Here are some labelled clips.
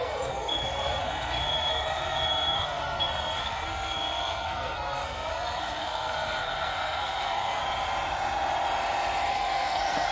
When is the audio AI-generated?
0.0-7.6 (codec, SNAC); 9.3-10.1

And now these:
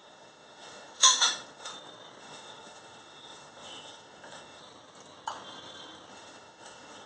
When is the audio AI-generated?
0.0-1.7 (autoencoder, DAC-VAE); 2.2-4.6; 6.1-7.1

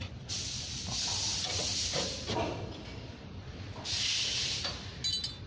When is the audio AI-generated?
1.3-4.6 (vocoder, BigVGAN v2)

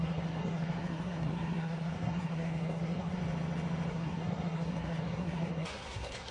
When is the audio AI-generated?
0.0-3.2 (codec, SNAC); 3.9-6.3